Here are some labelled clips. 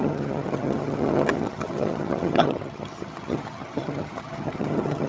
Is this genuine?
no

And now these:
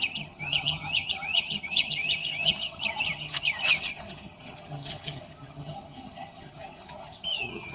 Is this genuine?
no